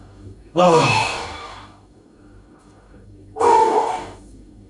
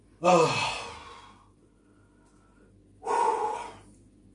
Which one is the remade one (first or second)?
first